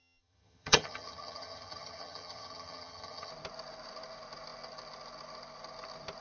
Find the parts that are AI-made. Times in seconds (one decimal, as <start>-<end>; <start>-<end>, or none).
0.0-3.3